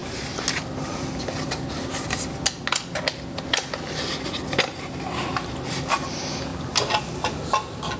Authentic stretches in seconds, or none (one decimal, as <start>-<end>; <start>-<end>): 0.0-8.0